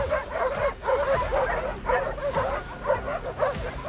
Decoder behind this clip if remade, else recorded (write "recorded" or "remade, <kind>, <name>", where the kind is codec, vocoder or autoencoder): recorded